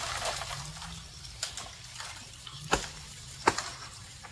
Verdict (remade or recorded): recorded